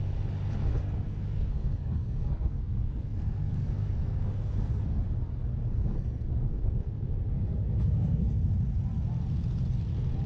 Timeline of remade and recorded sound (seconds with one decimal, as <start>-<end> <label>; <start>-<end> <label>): 0.0-0.6 recorded; 0.6-5.0 remade; 5.0-5.6 recorded; 5.6-8.5 remade; 8.5-10.3 recorded